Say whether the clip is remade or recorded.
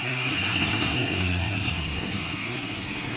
remade